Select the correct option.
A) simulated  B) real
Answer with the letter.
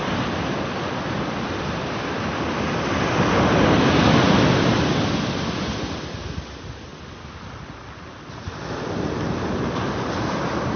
B